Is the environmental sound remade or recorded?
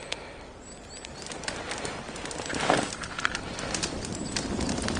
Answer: recorded